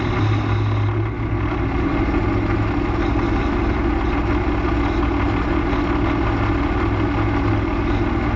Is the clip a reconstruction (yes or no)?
no